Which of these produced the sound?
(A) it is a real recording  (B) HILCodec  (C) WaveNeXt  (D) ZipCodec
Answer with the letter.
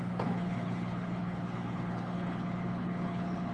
B